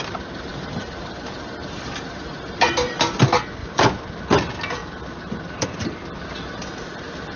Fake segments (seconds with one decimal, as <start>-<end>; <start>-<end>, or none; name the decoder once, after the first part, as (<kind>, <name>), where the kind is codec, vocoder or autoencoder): 0.5-3.2 (vocoder, BigVGAN v2); 3.6-4.2